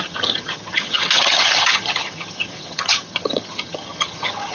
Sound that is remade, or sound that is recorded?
remade